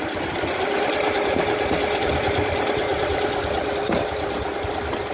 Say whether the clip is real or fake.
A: fake